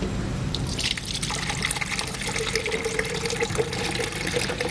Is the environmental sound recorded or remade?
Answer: recorded